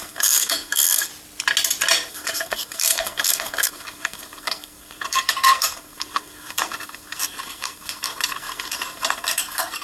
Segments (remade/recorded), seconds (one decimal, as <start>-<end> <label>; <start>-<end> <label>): 0.0-1.1 remade; 1.1-2.1 recorded; 2.1-9.8 remade